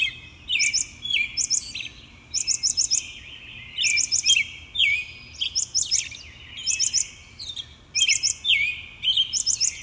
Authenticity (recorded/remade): recorded